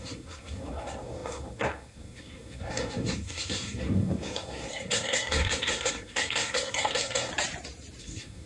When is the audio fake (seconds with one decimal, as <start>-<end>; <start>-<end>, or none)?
0.0-7.3; 8.0-8.5